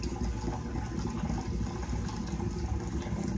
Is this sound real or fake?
real